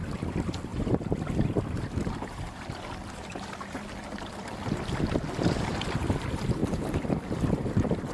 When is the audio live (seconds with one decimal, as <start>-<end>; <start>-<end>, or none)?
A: 0.0-6.6